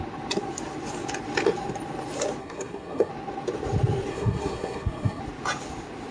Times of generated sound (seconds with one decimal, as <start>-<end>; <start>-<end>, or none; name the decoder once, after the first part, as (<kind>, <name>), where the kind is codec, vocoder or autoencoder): 2.4-3.1 (codec, SNAC); 4.1-5.2